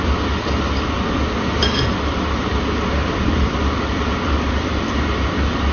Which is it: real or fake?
fake